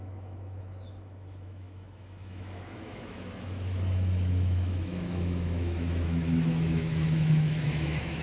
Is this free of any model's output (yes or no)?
no